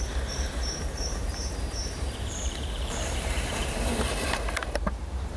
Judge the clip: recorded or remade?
remade